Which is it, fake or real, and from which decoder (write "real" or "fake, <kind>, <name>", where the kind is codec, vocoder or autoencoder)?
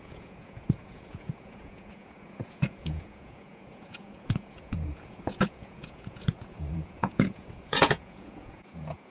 fake, vocoder, Vocos